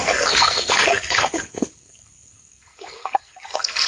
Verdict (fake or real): fake